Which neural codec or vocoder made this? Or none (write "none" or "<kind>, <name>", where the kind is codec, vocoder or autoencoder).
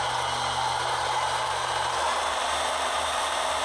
none